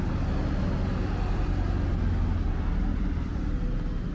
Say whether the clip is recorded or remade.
recorded